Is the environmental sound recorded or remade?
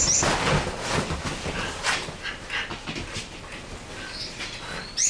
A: recorded